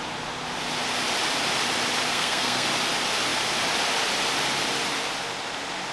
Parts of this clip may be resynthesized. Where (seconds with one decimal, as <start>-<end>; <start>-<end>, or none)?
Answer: 2.1-2.7